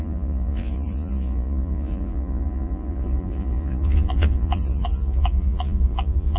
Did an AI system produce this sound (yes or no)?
yes